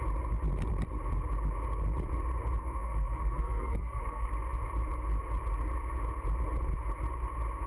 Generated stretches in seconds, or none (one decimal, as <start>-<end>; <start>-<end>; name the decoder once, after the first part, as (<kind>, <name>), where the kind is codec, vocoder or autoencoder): 2.6-4.3 (codec, SNAC)